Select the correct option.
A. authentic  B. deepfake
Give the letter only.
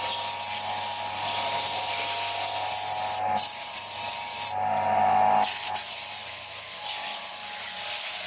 A